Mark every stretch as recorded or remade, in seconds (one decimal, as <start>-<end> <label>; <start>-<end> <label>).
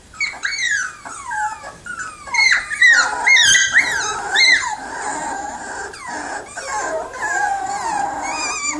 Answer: 0.0-8.8 remade